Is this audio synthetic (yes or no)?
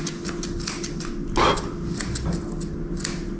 no